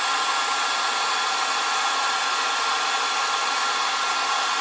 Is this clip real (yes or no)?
yes